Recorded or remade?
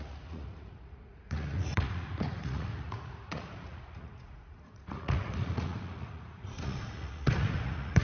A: remade